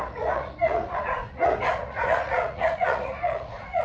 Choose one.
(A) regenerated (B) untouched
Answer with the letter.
A